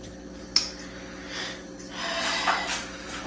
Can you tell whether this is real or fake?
real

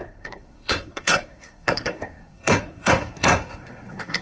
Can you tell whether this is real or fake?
fake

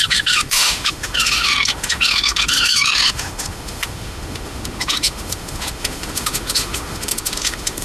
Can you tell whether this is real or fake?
fake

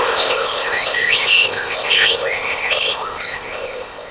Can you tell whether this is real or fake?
fake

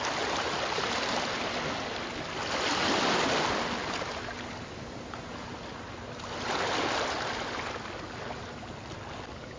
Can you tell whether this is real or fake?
real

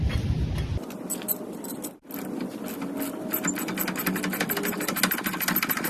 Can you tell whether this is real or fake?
real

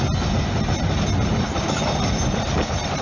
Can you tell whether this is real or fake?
real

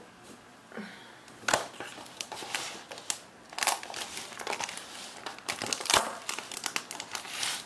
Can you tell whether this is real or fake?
real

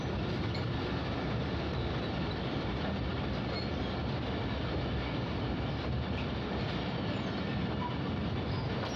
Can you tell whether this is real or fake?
real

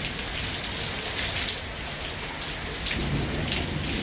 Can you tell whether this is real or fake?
real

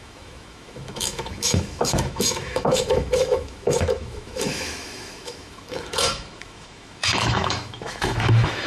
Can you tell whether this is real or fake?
fake